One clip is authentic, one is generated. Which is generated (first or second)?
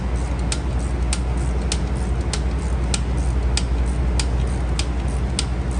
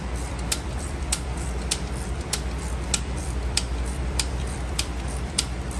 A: second